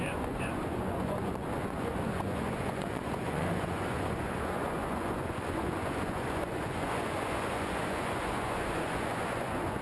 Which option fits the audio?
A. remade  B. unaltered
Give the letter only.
A